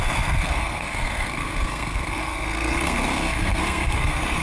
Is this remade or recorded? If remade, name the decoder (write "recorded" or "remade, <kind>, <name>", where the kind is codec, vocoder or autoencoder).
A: remade, codec, SNAC